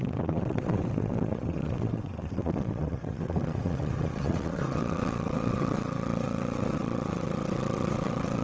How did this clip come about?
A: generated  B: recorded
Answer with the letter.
A